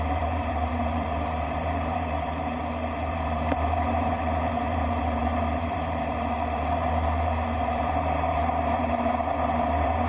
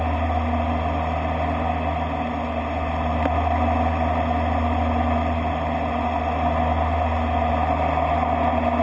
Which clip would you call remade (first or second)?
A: first